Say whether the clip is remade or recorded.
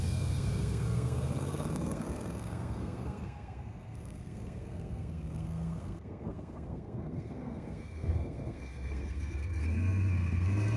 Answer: remade